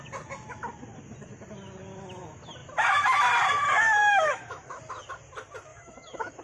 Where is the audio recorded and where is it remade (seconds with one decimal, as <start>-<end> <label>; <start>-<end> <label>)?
0.0-4.0 recorded; 4.0-4.8 remade; 4.8-5.7 recorded; 5.7-6.4 remade